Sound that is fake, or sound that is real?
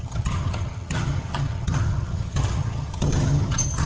fake